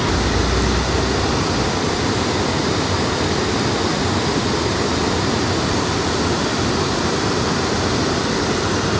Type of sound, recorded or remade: recorded